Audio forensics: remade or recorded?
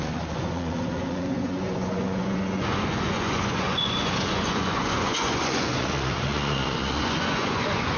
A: remade